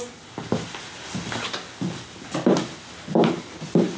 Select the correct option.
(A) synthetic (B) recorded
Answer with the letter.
B